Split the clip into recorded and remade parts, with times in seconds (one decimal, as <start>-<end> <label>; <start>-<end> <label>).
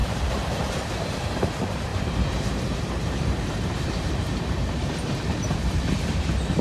0.0-0.7 remade; 0.7-1.9 recorded; 1.9-5.7 remade; 5.7-6.6 recorded